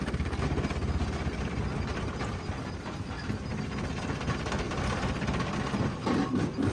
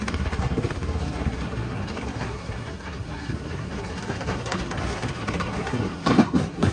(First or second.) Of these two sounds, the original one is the first